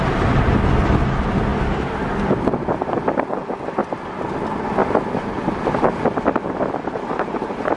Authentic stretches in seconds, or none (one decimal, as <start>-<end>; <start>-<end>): 0.0-3.8; 4.3-4.8; 5.8-7.8

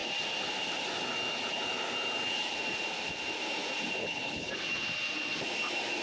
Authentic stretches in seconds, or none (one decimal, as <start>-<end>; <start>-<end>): 0.0-4.0; 4.5-6.0

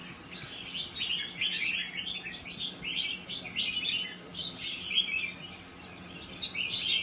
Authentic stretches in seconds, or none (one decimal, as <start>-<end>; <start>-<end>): 0.0-1.8; 2.7-4.3; 4.9-7.0

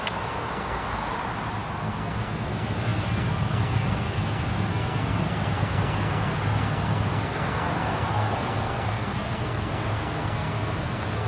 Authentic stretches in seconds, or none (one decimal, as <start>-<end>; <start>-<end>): 1.0-1.7

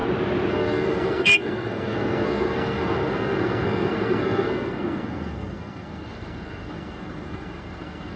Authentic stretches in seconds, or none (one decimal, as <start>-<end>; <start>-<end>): 0.0-0.5

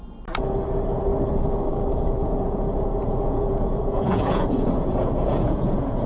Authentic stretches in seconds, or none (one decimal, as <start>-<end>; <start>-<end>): 0.0-2.2

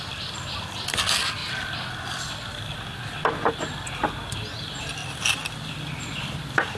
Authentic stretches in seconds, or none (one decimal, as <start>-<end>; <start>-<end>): 0.0-6.8